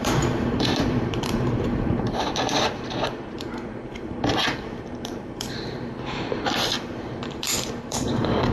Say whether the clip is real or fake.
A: fake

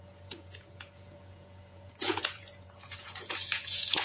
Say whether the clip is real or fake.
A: fake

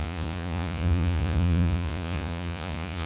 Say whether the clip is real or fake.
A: fake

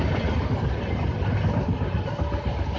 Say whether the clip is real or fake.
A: real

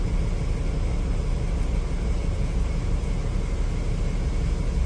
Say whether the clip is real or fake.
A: real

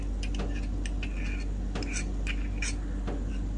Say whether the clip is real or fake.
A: real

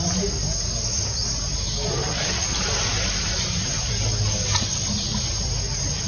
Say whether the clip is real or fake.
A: real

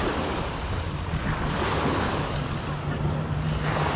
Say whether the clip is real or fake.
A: real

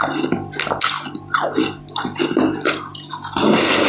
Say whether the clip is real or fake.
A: real